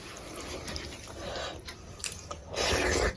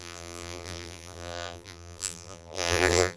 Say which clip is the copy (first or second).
second